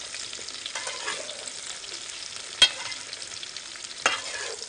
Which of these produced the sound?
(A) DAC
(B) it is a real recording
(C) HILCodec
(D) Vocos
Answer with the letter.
B